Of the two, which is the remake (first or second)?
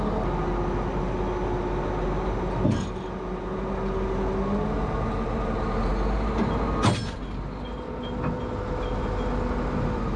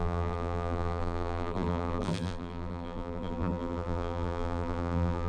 second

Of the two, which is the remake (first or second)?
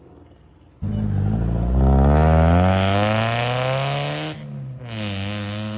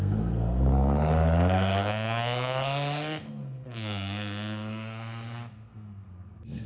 second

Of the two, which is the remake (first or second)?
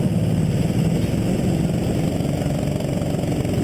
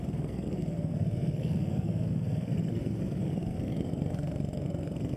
second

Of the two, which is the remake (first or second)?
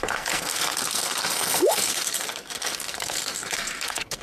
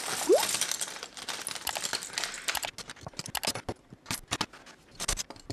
first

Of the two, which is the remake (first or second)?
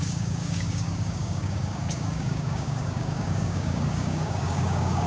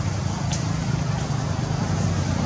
first